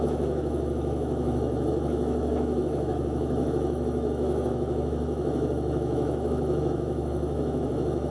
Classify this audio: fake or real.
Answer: fake